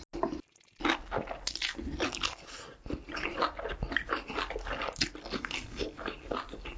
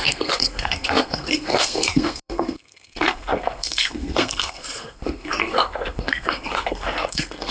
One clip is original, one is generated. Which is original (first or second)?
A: first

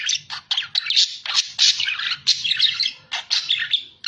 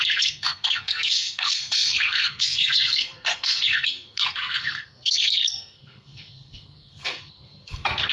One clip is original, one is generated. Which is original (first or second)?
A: first